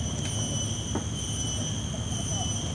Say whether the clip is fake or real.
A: real